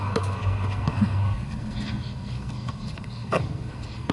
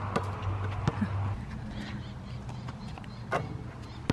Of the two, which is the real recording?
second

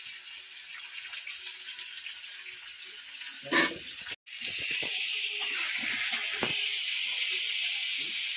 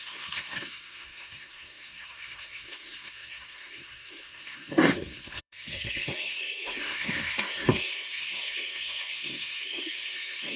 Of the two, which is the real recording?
first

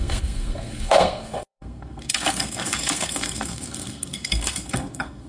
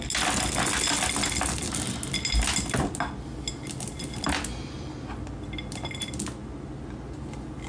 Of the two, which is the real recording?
second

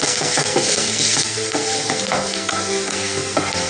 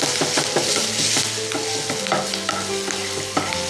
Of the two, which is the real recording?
second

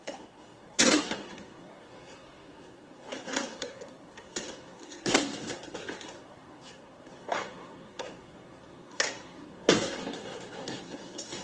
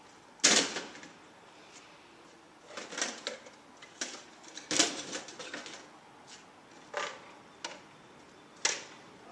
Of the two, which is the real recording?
second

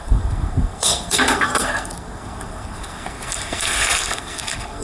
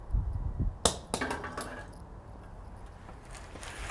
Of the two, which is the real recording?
second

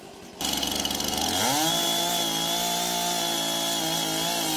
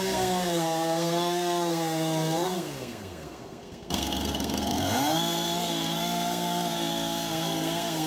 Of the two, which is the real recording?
first